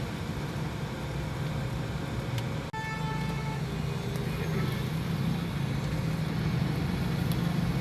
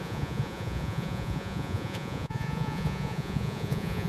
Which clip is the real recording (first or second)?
first